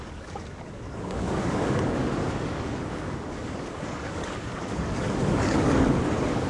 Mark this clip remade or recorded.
remade